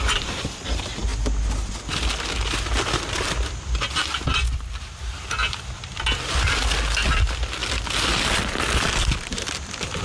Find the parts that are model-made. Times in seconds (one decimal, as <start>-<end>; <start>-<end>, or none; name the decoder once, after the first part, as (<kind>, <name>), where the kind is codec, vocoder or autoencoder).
none